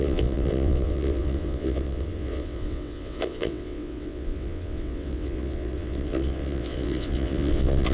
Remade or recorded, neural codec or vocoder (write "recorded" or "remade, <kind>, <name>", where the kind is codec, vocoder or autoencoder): remade, vocoder, WaveNeXt